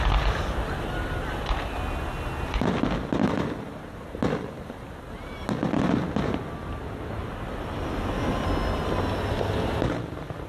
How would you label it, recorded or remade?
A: recorded